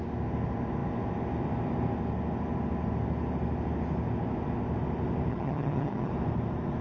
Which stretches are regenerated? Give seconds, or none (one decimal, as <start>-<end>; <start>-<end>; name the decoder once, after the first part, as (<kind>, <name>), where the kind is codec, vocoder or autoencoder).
5.3-6.1 (vocoder, HiFi-GAN)